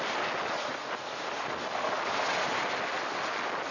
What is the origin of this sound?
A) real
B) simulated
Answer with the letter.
A